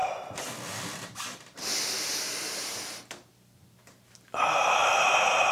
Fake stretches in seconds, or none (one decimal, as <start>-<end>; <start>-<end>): none